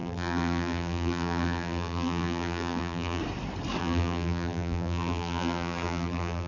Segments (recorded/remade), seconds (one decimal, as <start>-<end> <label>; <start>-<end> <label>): 0.0-3.2 remade; 3.2-3.8 recorded; 3.8-6.5 remade